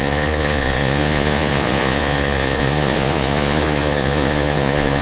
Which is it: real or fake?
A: fake